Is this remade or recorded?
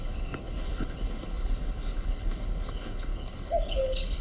remade